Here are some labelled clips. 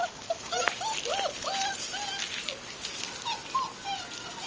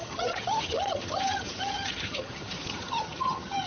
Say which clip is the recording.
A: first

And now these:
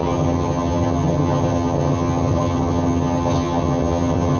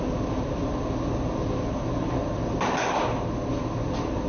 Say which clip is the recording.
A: second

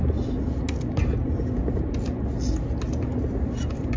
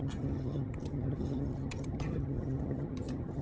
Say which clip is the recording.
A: first